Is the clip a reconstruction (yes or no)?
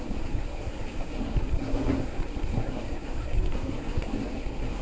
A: yes